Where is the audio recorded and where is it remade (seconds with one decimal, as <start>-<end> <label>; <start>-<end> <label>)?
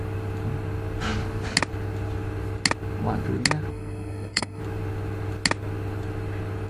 0.0-3.7 recorded; 3.7-4.6 remade; 4.6-6.7 recorded